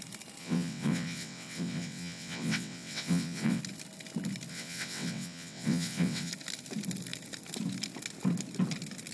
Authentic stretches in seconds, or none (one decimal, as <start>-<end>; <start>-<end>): 0.0-0.4; 3.6-4.5; 6.3-9.1